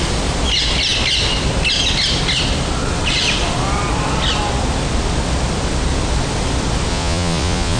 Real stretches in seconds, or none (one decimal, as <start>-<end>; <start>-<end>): 0.0-6.9